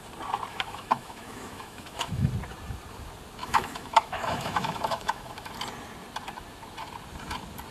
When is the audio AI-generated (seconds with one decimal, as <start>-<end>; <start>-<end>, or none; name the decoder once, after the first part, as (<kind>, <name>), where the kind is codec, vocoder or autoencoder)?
0.5-2.3 (autoencoder, DAC-VAE); 3.4-5.5